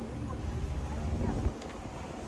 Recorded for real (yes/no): yes